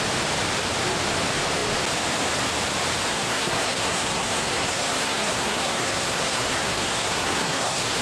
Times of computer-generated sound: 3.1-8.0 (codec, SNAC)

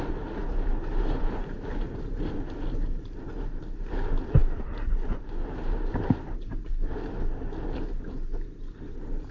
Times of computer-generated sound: 0.4-1.7 (vocoder, BigVGAN v2); 4.4-6.7

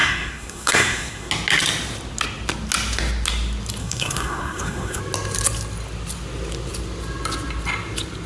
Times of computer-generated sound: 0.0-1.3 (codec, SNAC); 3.8-5.0

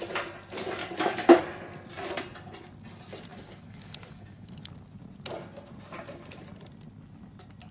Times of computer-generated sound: 0.8-1.4 (codec, DAC); 3.3-4.7

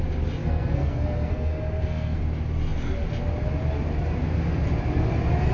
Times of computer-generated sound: 0.4-2.2 (codec, SNAC)

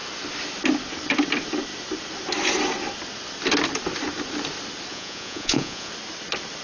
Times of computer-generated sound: 4.9-5.9 (vocoder, Vocos)